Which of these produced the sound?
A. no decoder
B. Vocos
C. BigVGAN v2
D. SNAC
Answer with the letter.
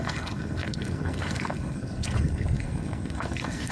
D